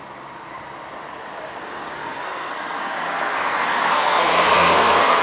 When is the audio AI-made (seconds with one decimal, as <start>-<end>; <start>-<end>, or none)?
2.0-5.2